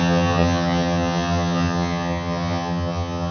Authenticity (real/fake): fake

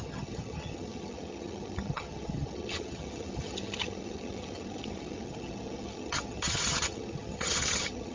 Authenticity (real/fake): fake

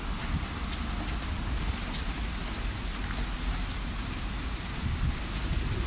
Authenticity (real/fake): real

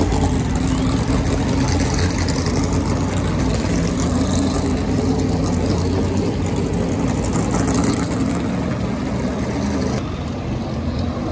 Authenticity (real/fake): real